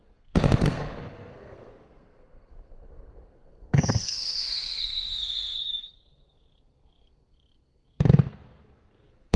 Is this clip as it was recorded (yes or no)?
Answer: no